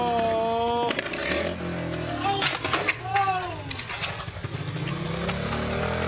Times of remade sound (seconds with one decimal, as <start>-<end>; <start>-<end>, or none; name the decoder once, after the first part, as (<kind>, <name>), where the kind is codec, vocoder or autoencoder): none